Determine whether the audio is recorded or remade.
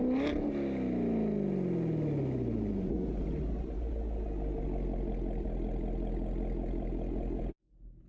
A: recorded